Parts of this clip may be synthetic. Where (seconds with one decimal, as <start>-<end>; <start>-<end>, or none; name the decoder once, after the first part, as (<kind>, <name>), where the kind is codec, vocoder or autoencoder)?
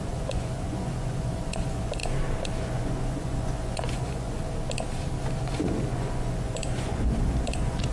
0.0-2.0 (vocoder, Vocos); 2.6-4.4; 5.4-7.9